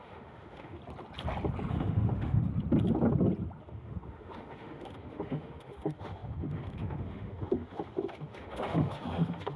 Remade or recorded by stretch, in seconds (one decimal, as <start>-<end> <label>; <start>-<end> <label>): 0.0-0.8 remade; 0.8-1.7 recorded; 1.7-2.5 remade; 2.5-3.6 recorded; 3.6-9.6 remade